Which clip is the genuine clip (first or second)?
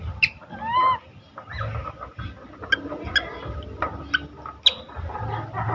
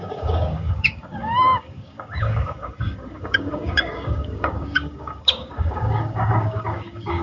first